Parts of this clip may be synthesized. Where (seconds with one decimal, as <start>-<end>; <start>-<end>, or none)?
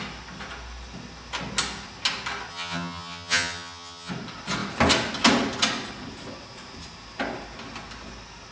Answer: 2.5-4.1